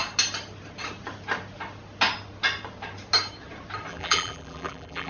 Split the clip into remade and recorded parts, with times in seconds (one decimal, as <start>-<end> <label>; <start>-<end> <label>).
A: 0.0-3.9 recorded; 3.9-5.1 remade